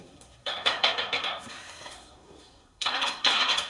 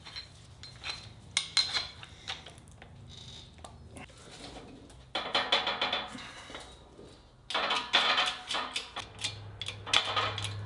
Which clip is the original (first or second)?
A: second